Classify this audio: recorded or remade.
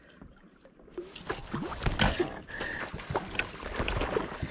recorded